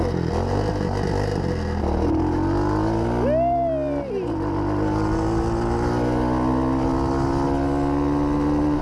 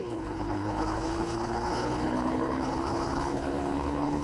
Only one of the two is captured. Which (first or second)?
first